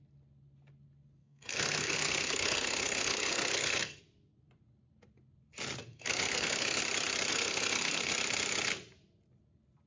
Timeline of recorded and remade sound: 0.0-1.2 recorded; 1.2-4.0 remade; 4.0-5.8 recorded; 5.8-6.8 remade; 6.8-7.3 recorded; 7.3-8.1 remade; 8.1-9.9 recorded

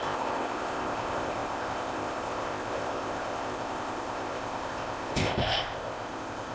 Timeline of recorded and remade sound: 0.0-6.5 remade

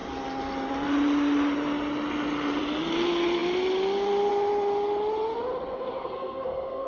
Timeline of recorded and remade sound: 0.0-5.7 recorded; 5.7-6.9 remade

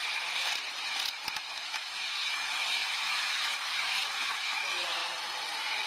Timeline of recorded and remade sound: 0.0-1.5 recorded; 1.5-5.0 remade; 5.0-5.9 recorded